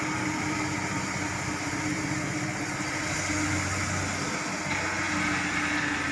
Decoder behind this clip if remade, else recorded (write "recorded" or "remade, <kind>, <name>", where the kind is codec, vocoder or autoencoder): recorded